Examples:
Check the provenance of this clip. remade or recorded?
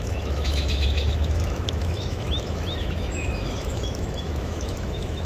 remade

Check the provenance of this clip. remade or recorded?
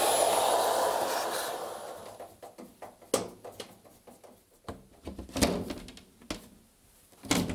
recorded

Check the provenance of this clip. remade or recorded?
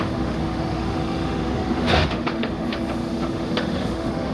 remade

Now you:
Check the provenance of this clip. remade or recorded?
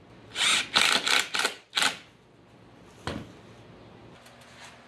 recorded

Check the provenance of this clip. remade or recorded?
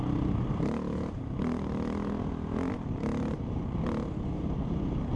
recorded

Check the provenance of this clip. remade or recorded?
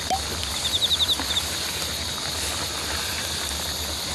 recorded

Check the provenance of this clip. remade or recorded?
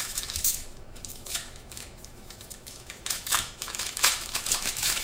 remade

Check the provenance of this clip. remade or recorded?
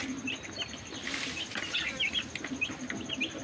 recorded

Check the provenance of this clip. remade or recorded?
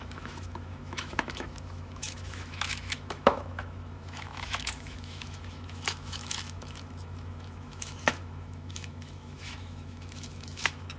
remade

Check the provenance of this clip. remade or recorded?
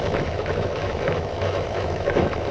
remade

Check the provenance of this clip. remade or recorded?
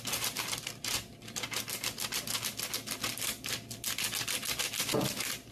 recorded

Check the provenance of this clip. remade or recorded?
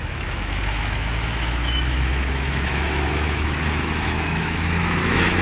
remade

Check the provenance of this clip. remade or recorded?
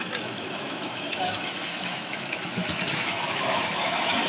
remade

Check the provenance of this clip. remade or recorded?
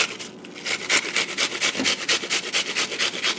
recorded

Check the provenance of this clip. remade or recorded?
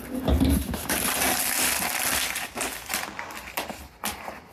recorded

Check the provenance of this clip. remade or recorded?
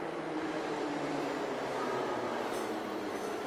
recorded